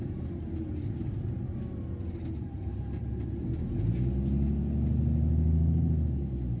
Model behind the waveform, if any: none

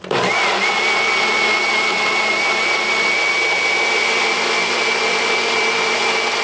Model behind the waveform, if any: none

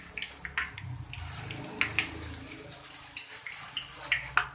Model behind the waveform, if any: none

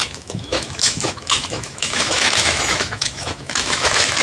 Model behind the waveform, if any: autoencoder, DAC-VAE